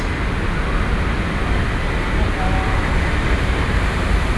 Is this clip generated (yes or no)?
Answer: no